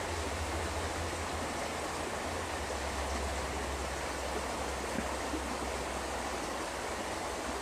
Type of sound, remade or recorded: recorded